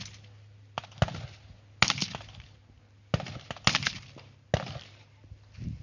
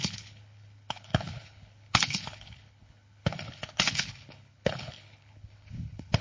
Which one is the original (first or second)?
first